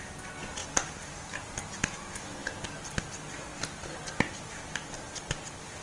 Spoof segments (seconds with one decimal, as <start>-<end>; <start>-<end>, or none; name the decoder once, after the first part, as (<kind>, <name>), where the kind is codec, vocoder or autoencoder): none